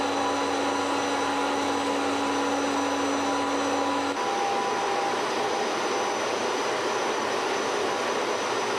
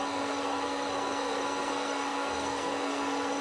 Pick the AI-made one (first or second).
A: second